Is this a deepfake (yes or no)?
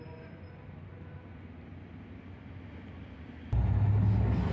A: no